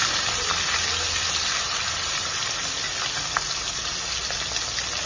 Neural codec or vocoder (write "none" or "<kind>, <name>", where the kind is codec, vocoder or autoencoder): none